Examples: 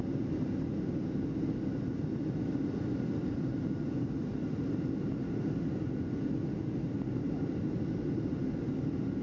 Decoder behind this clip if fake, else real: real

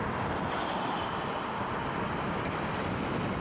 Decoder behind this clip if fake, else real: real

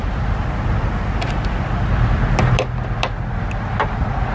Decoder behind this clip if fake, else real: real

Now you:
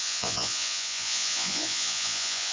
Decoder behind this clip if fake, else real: fake, vocoder, Vocos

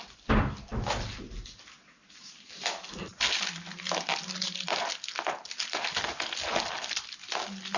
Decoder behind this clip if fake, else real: real